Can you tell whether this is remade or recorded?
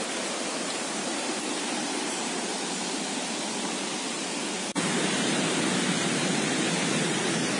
remade